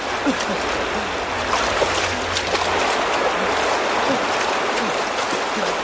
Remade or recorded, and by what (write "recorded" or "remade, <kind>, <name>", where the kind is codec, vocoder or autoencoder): recorded